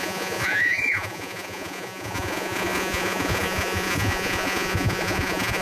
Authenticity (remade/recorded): remade